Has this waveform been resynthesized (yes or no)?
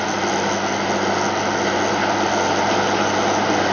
no